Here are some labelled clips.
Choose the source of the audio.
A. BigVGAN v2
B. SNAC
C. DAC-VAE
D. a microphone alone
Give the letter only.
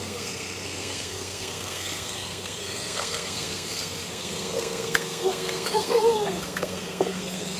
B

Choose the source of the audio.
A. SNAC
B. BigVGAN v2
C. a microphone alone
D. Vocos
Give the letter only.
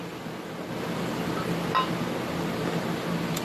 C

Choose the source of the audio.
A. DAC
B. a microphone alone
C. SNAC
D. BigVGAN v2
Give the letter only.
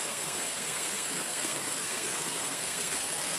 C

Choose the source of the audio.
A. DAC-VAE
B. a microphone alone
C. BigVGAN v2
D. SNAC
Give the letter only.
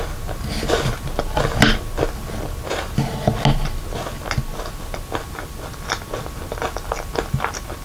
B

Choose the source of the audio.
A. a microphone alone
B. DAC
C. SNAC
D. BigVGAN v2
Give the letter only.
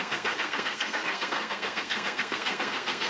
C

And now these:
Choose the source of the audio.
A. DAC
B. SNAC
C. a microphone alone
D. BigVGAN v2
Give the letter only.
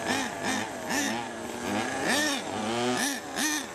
C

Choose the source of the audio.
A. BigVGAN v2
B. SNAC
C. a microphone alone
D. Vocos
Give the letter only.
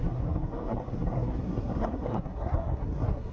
B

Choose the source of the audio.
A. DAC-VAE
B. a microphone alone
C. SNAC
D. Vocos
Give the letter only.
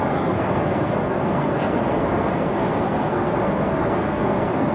C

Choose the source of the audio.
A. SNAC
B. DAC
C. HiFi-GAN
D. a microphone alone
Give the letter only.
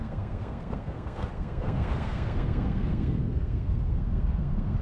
A